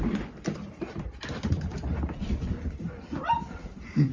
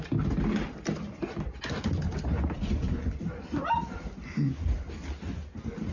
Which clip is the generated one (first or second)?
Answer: first